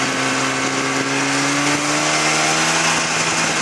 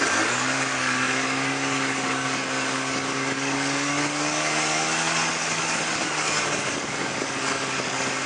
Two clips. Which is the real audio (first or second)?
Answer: first